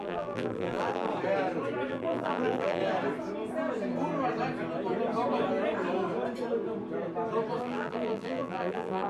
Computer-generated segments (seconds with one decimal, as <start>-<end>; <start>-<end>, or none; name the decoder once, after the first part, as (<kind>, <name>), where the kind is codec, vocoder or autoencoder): 0.0-1.1 (vocoder, BigVGAN v2); 1.9-2.8; 7.6-9.1